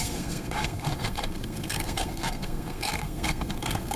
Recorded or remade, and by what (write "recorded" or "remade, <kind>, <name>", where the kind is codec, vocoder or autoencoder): remade, codec, SNAC